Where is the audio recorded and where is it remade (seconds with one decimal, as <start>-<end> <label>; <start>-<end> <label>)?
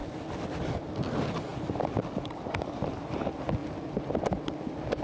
0.0-5.0 recorded